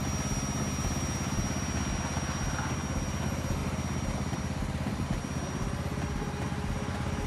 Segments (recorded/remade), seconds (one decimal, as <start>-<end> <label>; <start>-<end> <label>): 0.0-7.3 recorded